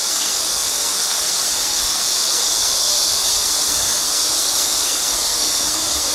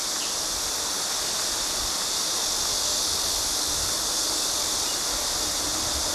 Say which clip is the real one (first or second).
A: second